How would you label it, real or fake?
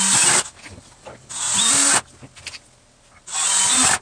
real